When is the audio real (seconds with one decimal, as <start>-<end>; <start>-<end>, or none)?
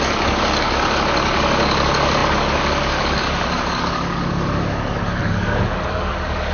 none